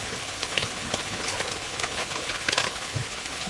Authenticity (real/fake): fake